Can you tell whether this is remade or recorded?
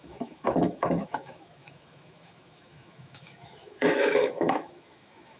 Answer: remade